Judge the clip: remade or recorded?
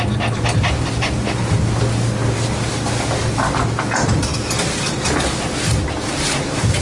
recorded